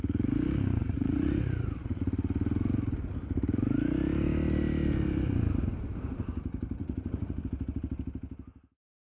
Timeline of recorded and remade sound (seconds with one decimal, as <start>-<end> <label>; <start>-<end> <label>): 0.0-0.8 recorded; 0.8-2.0 remade; 2.0-6.8 recorded; 6.8-7.4 remade; 7.4-9.2 recorded